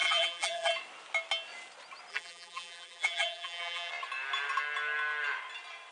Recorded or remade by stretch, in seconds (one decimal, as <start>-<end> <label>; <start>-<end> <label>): 0.0-0.7 remade; 0.7-2.1 recorded; 2.1-3.9 remade; 3.9-5.9 recorded

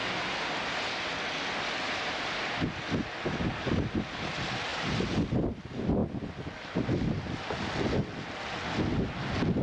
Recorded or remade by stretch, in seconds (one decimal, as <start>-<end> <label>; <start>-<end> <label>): 0.0-9.6 recorded

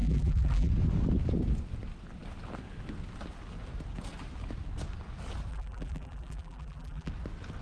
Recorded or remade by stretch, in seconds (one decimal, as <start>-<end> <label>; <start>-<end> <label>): 0.0-0.7 remade; 0.7-5.5 recorded; 5.5-7.1 remade; 7.1-7.6 recorded

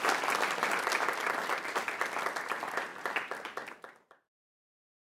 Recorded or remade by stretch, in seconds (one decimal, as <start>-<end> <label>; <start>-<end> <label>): 0.0-2.9 recorded; 2.9-4.6 remade; 4.6-5.1 recorded